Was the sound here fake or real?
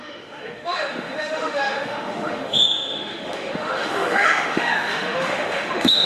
fake